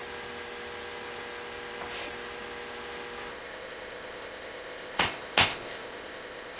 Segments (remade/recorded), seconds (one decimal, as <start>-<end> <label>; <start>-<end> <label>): 0.0-3.3 recorded; 3.3-6.6 remade